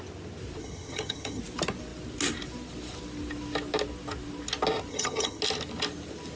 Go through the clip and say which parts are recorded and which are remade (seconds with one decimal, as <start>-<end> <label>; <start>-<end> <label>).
0.0-0.6 recorded; 0.6-1.4 remade; 1.4-4.9 recorded; 4.9-5.4 remade; 5.4-6.4 recorded